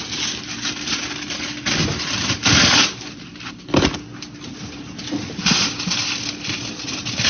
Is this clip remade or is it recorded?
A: recorded